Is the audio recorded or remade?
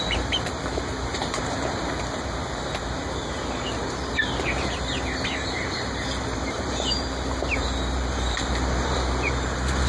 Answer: remade